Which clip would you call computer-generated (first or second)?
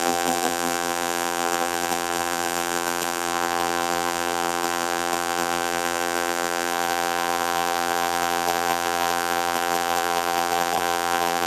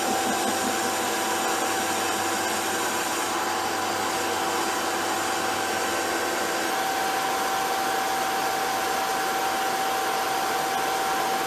first